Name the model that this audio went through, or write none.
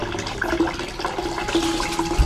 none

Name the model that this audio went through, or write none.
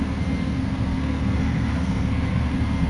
codec, SNAC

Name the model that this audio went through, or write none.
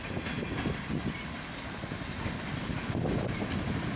none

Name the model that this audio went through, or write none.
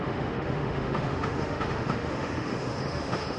autoencoder, DAC-VAE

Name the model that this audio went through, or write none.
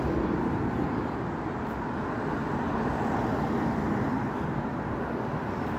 none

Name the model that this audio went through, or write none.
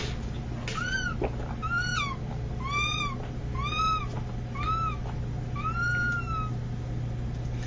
none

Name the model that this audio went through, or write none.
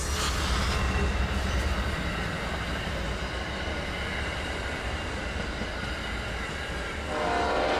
none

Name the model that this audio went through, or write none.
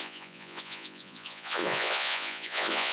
vocoder, Vocos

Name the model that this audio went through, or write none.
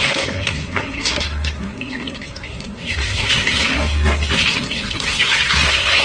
codec, SNAC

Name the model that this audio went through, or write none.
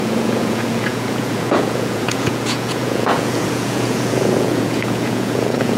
vocoder, Vocos